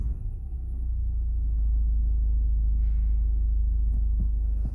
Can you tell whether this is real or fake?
real